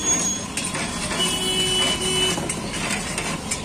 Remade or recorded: recorded